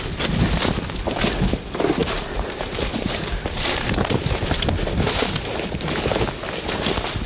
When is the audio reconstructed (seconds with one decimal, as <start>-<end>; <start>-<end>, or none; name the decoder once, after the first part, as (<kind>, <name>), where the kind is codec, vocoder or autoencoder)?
2.0-4.4 (vocoder, BigVGAN v2)